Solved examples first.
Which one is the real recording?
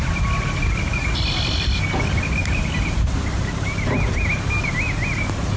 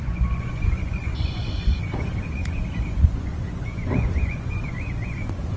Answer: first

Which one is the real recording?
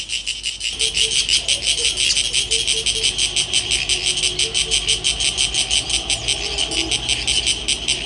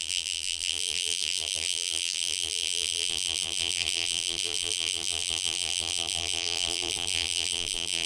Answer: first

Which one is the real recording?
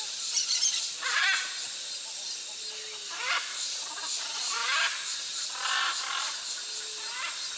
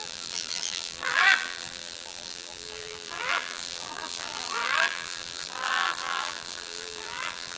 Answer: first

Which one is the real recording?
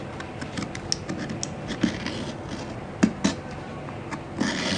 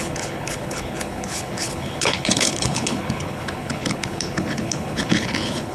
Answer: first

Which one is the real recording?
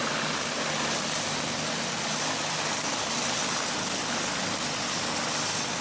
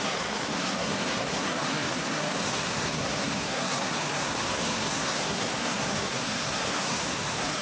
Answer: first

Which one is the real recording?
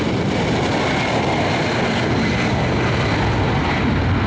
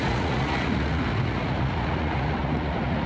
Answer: first